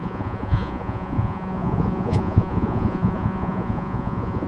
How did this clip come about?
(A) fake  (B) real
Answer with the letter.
A